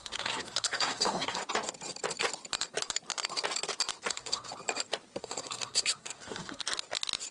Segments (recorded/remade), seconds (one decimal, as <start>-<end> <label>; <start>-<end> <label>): 0.0-1.4 remade; 1.4-4.1 recorded; 4.1-4.5 remade; 4.5-5.2 recorded; 5.2-6.6 remade; 6.6-7.3 recorded